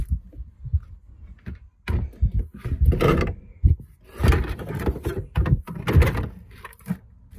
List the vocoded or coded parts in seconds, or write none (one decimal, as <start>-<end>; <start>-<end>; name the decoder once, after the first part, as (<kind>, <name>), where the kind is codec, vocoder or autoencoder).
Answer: 2.5-6.9 (vocoder, BigVGAN v2)